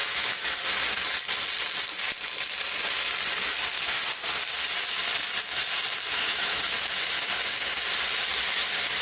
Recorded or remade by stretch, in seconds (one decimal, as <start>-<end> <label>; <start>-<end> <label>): 0.0-0.6 remade; 0.6-6.1 recorded; 6.1-6.6 remade; 6.6-9.0 recorded